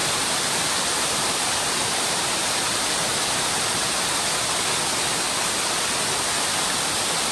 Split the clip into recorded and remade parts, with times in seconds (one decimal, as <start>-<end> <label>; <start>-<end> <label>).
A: 0.0-4.3 remade; 4.3-7.3 recorded